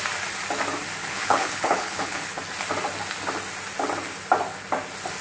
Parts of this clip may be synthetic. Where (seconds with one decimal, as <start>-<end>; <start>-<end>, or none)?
1.0-2.4